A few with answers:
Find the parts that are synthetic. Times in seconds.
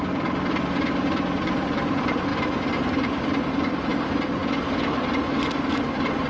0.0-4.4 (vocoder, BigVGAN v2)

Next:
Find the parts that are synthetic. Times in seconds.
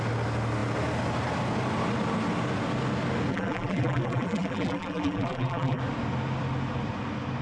3.3-5.8 (vocoder, BigVGAN v2)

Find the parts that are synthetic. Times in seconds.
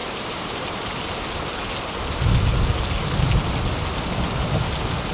0.0-1.0 (vocoder, BigVGAN v2)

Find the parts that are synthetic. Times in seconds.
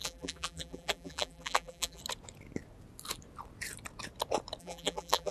0.0-2.0 (vocoder, BigVGAN v2); 4.6-5.3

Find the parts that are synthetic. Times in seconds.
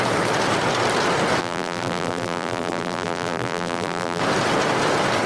1.4-4.2 (vocoder, BigVGAN v2)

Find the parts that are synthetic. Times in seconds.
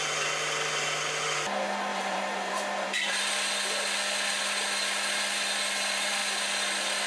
1.9-3.1 (vocoder, BigVGAN v2)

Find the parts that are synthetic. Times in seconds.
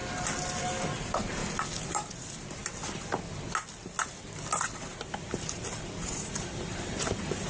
0.6-1.4 (vocoder, BigVGAN v2); 1.9-2.6; 4.8-7.5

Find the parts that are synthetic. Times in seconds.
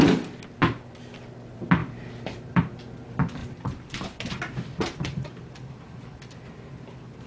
1.8-2.8 (vocoder, BigVGAN v2); 3.4-6.0